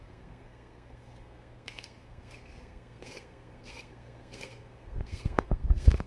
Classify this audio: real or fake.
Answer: fake